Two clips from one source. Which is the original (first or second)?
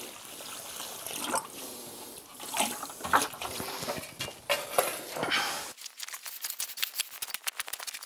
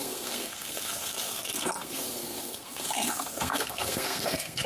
first